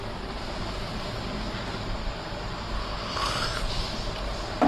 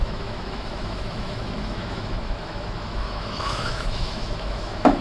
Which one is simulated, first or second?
second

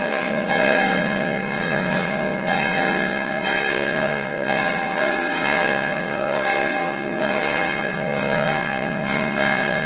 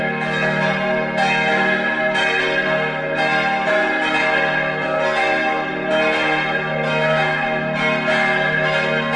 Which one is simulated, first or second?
first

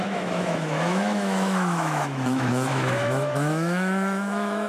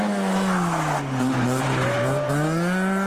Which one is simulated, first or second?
first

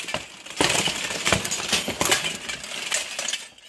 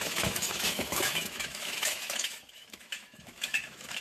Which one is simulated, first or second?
second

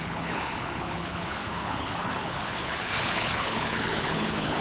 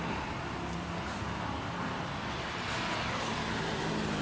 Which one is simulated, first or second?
first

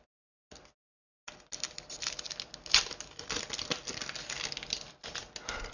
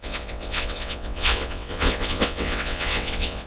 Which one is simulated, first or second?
second